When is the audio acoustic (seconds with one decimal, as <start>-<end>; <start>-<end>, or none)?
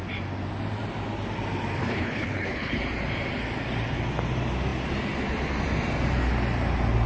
0.0-1.8; 2.8-7.1